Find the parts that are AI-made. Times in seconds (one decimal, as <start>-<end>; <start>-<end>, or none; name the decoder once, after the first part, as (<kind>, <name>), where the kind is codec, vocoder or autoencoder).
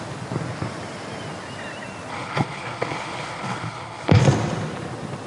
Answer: 2.1-4.2 (codec, HILCodec)